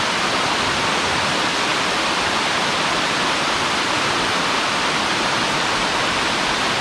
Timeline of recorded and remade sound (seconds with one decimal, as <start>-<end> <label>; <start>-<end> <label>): 0.0-6.8 recorded